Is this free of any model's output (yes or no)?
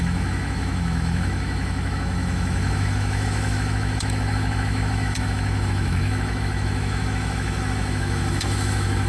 no